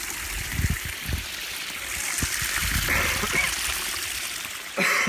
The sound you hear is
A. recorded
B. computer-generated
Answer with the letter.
A